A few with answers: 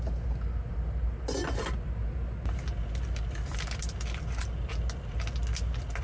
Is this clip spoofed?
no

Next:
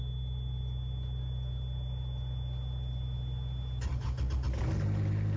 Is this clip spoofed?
no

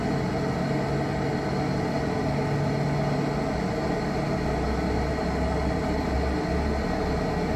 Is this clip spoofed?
no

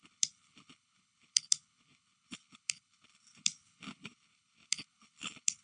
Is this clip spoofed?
yes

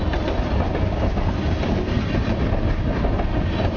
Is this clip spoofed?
no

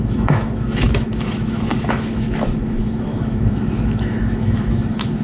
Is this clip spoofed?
yes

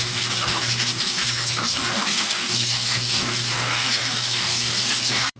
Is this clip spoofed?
yes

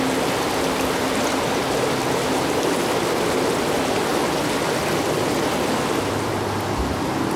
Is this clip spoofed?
no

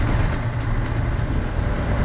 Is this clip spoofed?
no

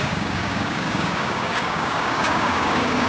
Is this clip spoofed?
yes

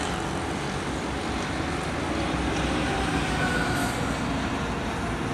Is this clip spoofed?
no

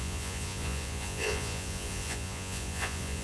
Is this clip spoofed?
yes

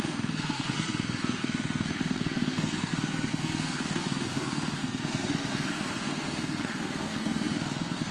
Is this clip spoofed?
yes